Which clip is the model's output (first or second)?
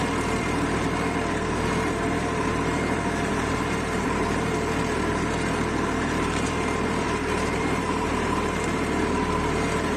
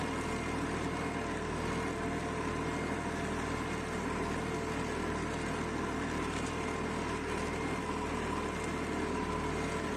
first